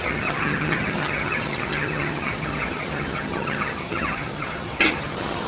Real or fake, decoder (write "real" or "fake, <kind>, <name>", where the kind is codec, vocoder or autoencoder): fake, vocoder, HiFi-GAN